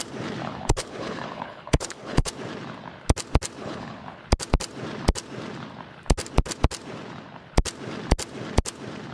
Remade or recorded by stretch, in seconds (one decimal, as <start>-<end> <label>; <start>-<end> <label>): 0.0-0.4 recorded; 0.4-2.3 remade; 2.3-3.6 recorded; 3.6-4.2 remade; 4.2-9.1 recorded